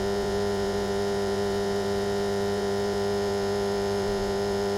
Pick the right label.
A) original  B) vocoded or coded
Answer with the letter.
B